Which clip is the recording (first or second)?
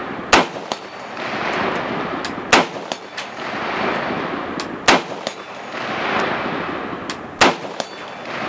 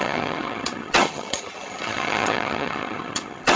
first